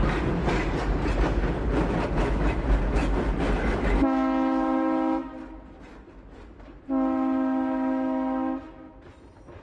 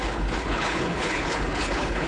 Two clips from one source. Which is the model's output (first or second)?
second